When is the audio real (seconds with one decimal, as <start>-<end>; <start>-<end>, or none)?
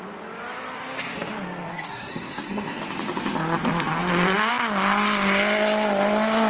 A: 0.0-1.7; 2.8-6.5